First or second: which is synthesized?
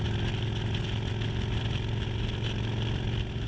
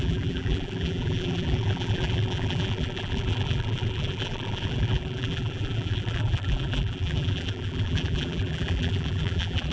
second